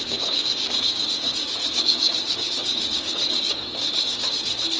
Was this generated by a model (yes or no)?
yes